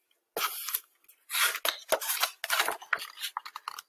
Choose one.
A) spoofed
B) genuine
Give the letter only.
B